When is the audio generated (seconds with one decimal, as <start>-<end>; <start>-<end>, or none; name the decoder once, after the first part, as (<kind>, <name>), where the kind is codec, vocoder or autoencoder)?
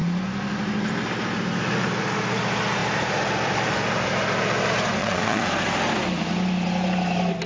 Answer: 5.0-5.5 (vocoder, Vocos)